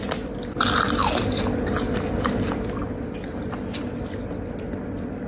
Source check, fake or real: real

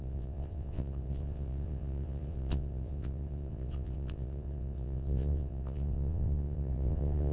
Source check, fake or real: fake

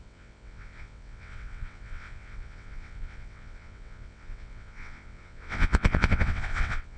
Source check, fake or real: fake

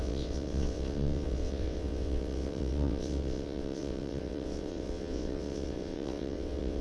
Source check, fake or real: fake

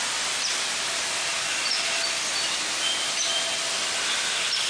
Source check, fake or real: real